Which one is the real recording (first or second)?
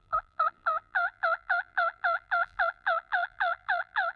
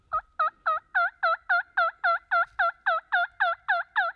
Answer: second